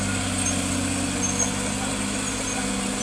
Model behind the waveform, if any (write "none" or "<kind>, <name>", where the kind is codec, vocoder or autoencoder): none